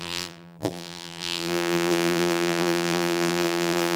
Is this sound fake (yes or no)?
yes